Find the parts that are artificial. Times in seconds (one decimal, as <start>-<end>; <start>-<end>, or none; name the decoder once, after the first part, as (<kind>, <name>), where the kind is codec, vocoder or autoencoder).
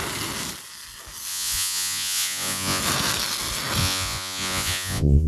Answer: 1.3-2.8 (vocoder, Vocos); 3.8-5.3